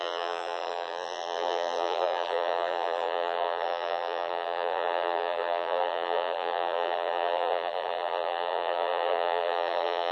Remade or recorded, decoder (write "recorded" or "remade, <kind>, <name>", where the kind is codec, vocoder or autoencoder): remade, vocoder, BigVGAN v2